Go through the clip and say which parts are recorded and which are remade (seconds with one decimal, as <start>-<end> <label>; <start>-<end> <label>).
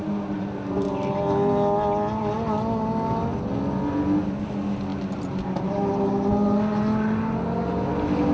0.0-8.3 recorded